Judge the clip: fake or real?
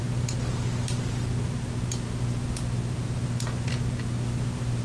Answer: real